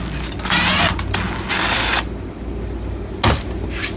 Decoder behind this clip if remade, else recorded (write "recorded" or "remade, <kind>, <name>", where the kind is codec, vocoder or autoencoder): recorded